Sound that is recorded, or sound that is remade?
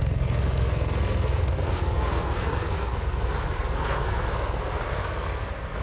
remade